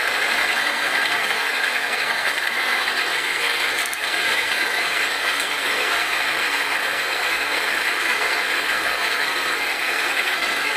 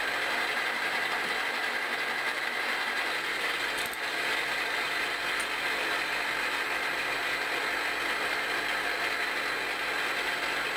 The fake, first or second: first